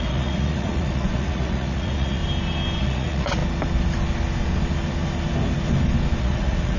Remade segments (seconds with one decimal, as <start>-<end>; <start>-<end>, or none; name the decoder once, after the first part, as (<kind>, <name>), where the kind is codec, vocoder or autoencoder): 0.0-2.2 (vocoder, Vocos); 2.8-3.4; 6.2-6.8